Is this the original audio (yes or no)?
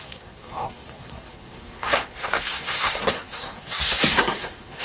no